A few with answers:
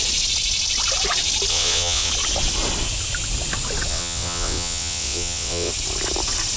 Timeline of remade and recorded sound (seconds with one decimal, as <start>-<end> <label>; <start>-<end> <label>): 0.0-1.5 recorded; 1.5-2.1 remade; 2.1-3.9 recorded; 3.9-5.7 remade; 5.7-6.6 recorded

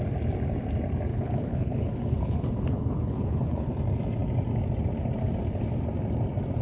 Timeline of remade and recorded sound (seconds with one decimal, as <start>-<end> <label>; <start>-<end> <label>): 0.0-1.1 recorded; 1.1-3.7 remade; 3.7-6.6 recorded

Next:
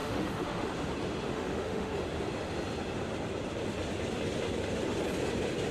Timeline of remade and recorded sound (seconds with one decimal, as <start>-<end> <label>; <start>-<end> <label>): 0.0-0.7 remade; 0.7-1.3 recorded; 1.3-1.9 remade; 1.9-5.7 recorded

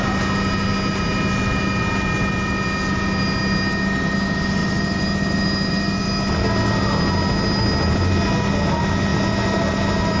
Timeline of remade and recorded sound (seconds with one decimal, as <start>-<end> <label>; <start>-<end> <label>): 0.0-10.2 recorded

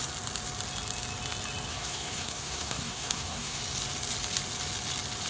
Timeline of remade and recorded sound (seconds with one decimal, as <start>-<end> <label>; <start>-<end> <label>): 0.0-1.7 recorded; 1.7-3.6 remade; 3.6-5.3 recorded

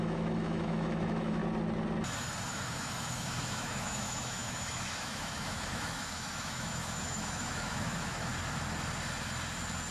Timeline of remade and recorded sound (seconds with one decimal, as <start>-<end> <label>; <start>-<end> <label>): 0.0-1.4 remade; 1.4-2.5 recorded; 2.5-8.3 remade; 8.3-9.9 recorded